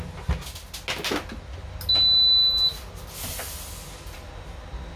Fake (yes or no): no